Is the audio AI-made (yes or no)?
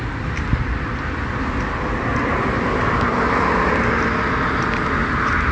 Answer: no